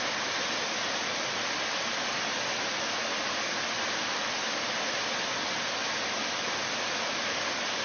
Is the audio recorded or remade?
recorded